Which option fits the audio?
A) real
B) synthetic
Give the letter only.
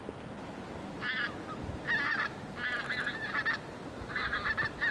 A